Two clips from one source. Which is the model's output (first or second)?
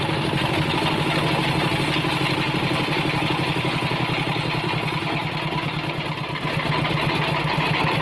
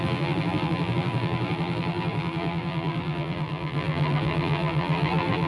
second